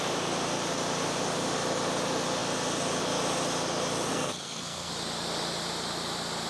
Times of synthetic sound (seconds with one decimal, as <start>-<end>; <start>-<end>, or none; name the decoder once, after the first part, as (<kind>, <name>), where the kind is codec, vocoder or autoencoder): 4.1-4.9 (codec, SNAC)